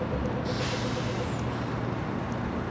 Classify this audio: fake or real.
real